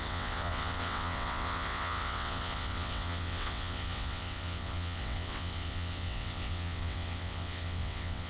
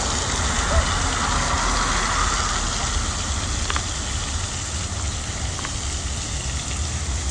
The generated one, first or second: first